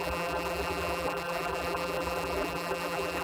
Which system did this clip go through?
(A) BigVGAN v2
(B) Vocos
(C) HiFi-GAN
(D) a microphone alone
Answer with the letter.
A